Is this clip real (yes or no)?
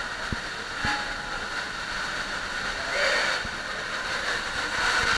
yes